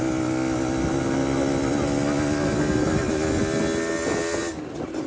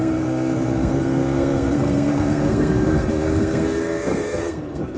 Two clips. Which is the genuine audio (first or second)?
first